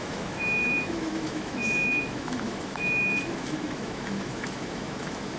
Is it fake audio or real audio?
fake